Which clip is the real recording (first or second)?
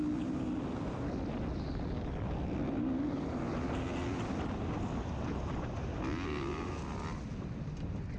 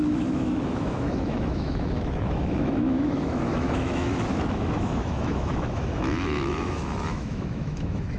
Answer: first